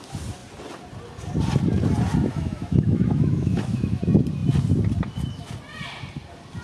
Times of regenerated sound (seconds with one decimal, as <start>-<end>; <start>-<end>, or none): 2.2-4.0